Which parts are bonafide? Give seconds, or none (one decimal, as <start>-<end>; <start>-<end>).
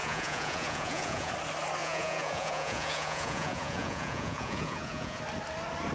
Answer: 1.3-1.8; 5.2-5.9